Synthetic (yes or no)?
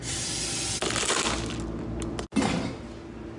no